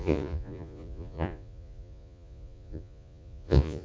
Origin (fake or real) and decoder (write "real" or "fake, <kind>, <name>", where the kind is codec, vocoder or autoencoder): fake, vocoder, Vocos